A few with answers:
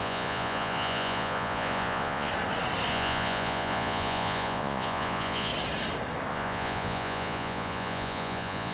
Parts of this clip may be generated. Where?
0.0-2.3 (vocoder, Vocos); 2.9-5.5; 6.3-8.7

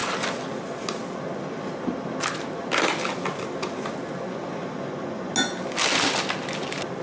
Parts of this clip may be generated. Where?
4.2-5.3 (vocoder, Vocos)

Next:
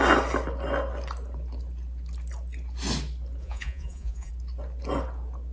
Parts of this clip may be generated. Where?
3.4-4.3 (vocoder, Vocos)

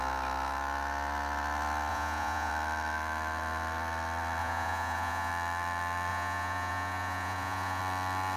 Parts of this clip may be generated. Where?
1.9-2.5 (vocoder, Vocos); 4.4-5.3; 6.1-7.8

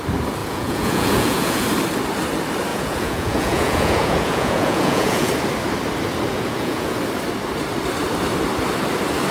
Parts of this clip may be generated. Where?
0.4-1.7 (vocoder, Vocos); 2.7-5.3; 6.3-7.0

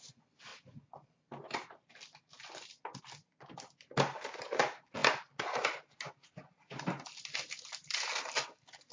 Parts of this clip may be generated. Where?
none

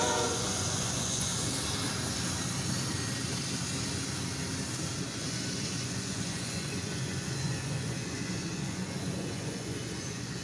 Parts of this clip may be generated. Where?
0.0-1.3 (vocoder, Vocos); 5.1-10.4

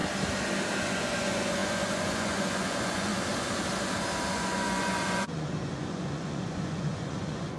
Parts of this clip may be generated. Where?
0.8-3.1 (vocoder, Vocos); 4.3-7.6